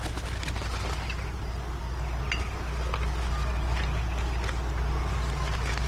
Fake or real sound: real